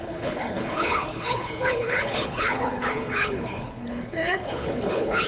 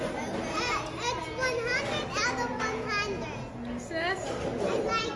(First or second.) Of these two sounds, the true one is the second